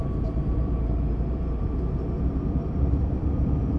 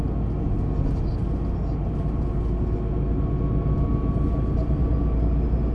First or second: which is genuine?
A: second